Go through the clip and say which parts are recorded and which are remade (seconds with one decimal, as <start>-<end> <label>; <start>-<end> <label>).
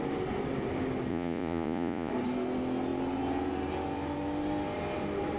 0.0-1.1 recorded; 1.1-2.1 remade; 2.1-5.4 recorded